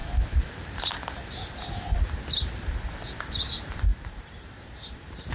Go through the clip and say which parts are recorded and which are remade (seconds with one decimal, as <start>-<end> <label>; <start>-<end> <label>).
0.0-3.2 recorded; 3.2-5.3 remade